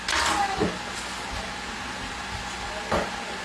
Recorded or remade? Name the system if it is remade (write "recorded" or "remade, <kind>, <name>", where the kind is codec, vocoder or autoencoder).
recorded